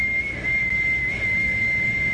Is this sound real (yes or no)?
yes